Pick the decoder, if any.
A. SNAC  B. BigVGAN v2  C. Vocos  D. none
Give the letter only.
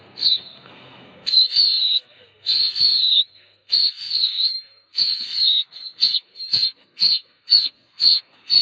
A